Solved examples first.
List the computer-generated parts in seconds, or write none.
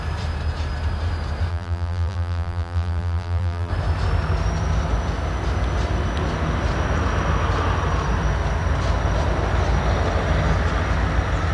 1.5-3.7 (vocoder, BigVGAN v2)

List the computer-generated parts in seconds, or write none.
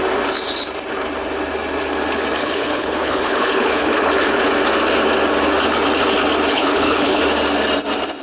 2.4-4.5 (codec, HILCodec); 6.5-7.2